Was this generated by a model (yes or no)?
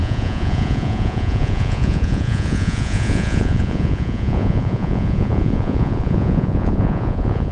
yes